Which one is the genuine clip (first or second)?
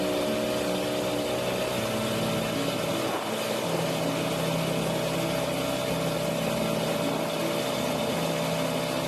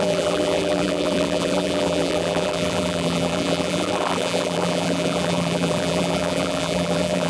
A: first